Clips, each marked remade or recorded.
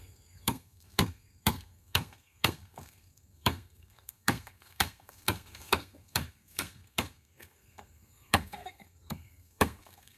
remade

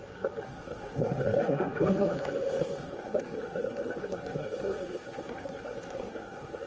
remade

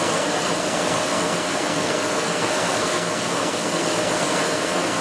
remade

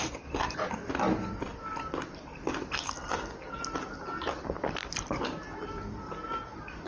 recorded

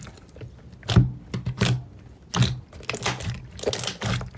recorded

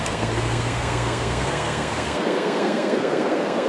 remade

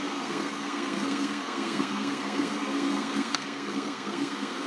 remade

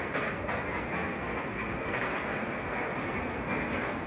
remade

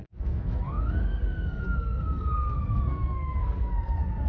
remade